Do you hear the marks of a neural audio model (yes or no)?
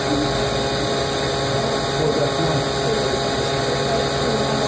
no